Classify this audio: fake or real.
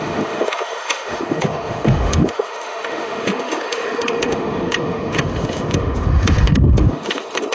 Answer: fake